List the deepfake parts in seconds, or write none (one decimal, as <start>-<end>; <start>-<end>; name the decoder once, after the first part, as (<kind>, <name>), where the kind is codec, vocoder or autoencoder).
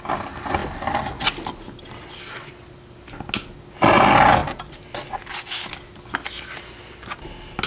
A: none